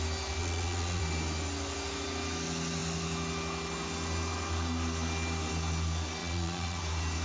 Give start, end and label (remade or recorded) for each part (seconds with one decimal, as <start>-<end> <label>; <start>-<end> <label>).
0.0-0.4 recorded; 0.4-1.0 remade; 1.0-6.2 recorded; 6.2-6.8 remade; 6.8-7.2 recorded